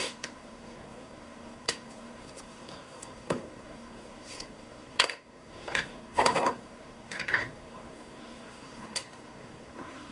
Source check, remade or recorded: remade